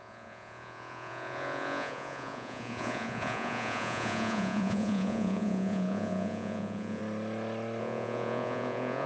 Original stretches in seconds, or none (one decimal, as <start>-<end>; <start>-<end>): 7.0-7.8